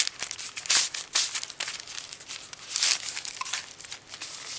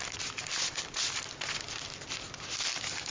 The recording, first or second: first